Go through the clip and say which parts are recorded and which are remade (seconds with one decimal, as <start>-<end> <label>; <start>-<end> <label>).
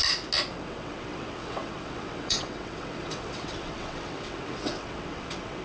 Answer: 0.0-0.5 recorded; 0.5-5.6 remade